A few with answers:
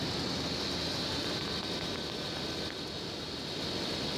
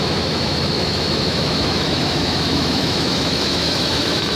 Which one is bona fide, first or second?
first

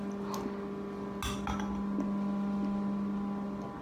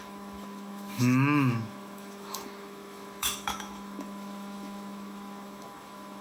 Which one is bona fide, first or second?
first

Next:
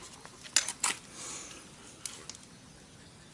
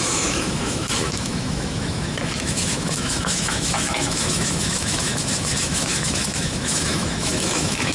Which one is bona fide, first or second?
first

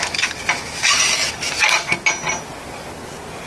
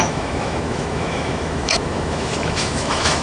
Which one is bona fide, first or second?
first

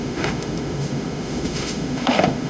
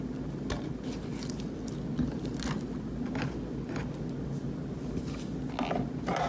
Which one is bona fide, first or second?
second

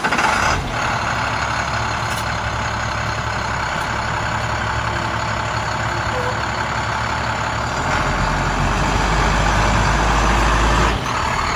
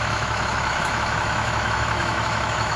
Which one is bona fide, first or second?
first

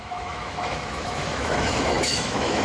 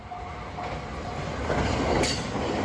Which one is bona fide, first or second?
second